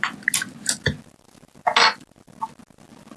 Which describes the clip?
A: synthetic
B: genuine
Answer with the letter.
B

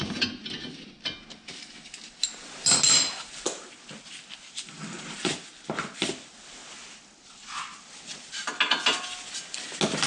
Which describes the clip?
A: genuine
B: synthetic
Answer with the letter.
A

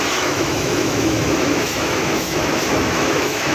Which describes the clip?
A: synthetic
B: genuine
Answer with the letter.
A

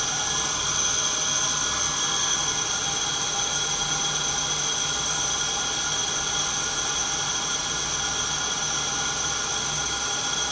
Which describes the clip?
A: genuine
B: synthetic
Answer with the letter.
A